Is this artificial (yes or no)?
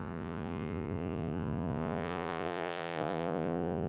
yes